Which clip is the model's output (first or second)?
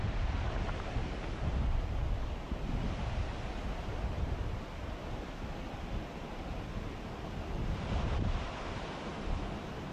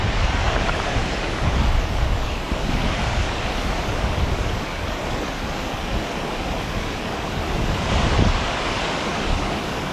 second